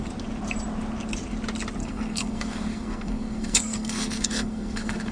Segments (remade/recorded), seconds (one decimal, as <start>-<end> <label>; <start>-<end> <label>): 0.0-1.8 recorded; 1.8-5.1 remade